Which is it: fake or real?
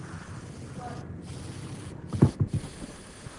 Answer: real